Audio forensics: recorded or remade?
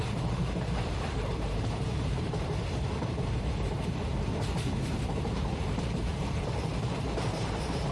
remade